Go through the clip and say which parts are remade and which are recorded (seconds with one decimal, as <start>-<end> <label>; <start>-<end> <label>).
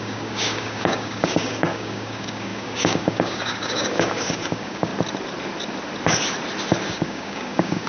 0.0-4.9 remade; 4.9-6.9 recorded; 6.9-7.9 remade